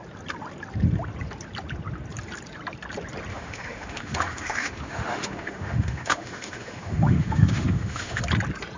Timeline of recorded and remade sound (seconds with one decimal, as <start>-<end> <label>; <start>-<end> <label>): 0.0-3.3 recorded; 3.3-8.2 remade; 8.2-8.8 recorded